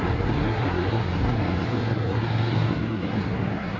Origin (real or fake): fake